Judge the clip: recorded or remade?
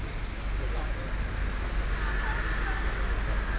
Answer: recorded